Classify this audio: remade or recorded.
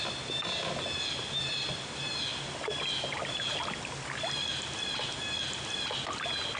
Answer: recorded